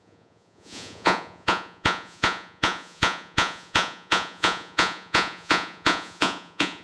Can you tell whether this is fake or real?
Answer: fake